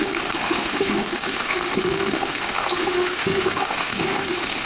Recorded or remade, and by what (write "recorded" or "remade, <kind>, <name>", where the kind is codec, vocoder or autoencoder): remade, autoencoder, DAC-VAE